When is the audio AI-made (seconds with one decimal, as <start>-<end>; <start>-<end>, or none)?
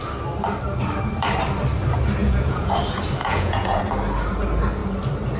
2.2-2.7; 3.2-3.8